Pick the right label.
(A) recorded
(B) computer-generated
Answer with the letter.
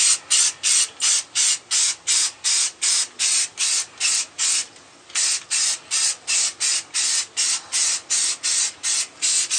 A